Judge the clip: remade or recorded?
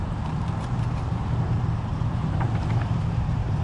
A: remade